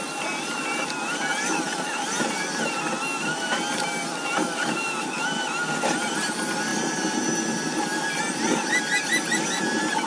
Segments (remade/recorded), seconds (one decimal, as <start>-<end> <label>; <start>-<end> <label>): 0.0-10.1 recorded